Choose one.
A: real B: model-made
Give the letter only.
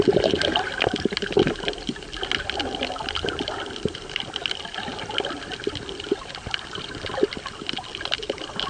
A